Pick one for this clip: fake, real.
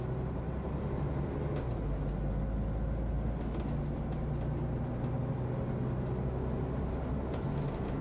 real